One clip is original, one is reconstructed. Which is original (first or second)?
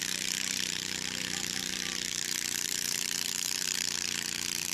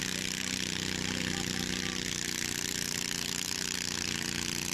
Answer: second